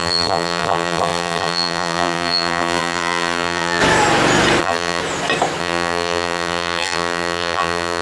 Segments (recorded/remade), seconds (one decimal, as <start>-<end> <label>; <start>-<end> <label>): 0.0-3.8 remade; 3.8-4.6 recorded; 4.6-5.0 remade; 5.0-5.6 recorded; 5.6-8.0 remade